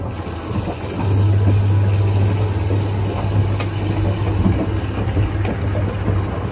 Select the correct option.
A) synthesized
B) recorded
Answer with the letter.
B